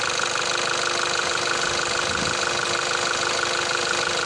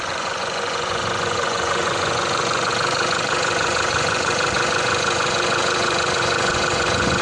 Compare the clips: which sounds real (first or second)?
first